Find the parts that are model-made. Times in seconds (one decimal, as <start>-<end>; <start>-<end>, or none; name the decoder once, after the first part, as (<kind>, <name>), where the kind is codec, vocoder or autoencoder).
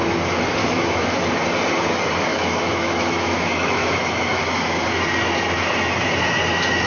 0.6-1.2 (autoencoder, DAC-VAE); 2.3-4.4